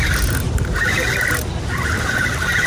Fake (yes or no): no